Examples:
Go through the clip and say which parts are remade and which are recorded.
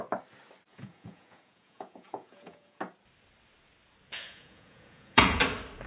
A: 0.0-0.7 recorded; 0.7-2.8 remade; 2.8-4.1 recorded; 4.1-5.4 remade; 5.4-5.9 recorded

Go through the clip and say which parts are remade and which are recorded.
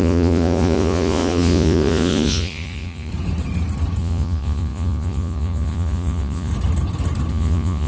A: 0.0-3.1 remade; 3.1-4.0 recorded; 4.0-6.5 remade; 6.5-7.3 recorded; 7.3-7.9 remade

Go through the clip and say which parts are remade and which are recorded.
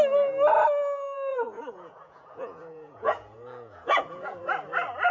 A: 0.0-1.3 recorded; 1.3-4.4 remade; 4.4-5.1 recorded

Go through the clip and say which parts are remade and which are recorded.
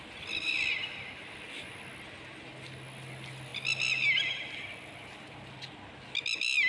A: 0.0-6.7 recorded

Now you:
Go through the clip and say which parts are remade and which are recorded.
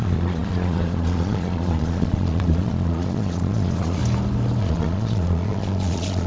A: 0.0-4.0 remade; 4.0-4.6 recorded; 4.6-6.3 remade